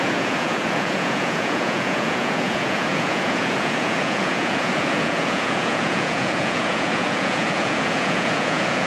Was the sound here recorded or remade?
remade